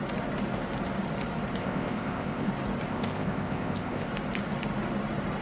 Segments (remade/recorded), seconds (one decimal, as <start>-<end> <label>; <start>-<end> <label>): 0.0-1.6 recorded; 1.6-2.5 remade; 2.5-2.9 recorded; 2.9-4.1 remade; 4.1-5.4 recorded